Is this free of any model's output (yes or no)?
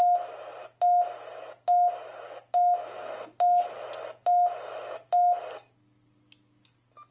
yes